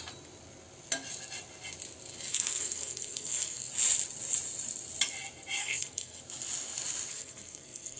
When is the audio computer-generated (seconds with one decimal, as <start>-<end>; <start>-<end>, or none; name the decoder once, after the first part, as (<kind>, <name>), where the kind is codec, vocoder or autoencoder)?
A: 2.3-3.7 (codec, SNAC); 5.6-6.2; 7.1-8.0